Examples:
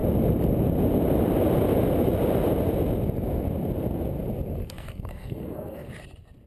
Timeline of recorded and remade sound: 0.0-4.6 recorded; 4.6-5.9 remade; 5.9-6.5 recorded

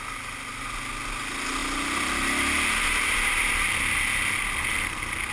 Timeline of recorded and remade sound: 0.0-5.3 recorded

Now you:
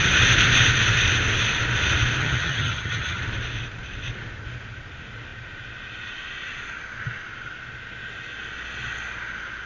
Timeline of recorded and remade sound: 0.0-2.2 recorded; 2.2-3.2 remade; 3.2-9.7 recorded

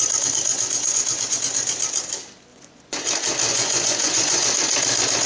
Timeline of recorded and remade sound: 0.0-0.5 recorded; 0.5-1.4 remade; 1.4-2.5 recorded; 2.5-3.1 remade; 3.1-3.5 recorded; 3.5-4.5 remade; 4.5-5.3 recorded